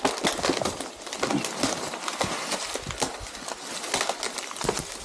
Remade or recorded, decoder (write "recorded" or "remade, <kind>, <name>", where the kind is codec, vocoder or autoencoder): recorded